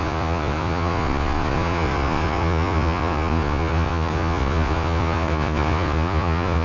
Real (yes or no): no